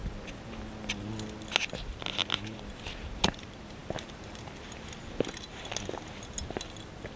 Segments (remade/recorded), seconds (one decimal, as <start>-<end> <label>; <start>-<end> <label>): 0.0-7.2 recorded